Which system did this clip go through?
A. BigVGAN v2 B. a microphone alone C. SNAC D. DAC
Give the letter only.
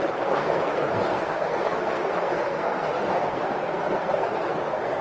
C